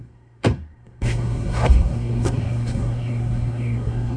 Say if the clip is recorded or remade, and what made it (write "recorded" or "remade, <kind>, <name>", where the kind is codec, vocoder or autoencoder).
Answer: remade, codec, SNAC